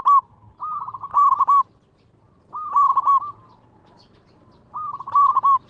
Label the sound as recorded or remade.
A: recorded